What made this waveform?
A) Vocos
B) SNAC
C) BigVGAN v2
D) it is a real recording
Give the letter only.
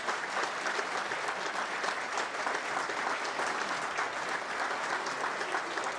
D